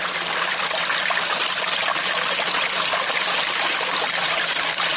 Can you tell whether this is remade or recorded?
recorded